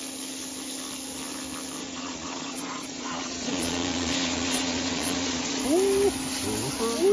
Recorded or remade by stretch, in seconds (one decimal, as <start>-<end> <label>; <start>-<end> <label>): 0.0-1.8 recorded; 1.8-5.6 remade; 5.6-7.1 recorded